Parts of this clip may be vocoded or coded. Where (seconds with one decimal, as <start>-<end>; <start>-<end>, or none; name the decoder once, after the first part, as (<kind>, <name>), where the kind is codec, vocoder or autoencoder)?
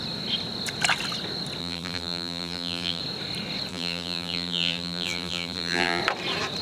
1.6-3.0 (vocoder, BigVGAN v2); 3.7-6.0